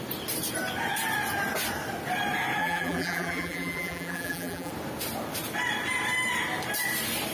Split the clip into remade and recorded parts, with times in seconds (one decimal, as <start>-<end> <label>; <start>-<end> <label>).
0.0-2.6 recorded; 2.6-4.7 remade; 4.7-7.3 recorded